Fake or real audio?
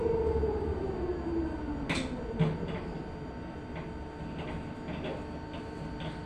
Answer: real